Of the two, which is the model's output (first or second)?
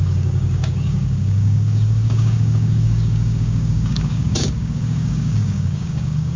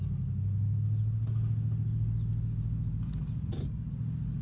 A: first